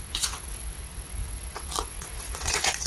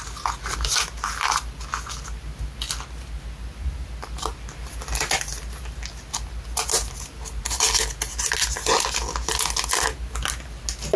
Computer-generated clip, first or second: first